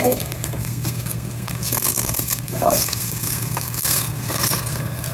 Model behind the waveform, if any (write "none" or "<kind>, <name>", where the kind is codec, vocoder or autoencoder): codec, SNAC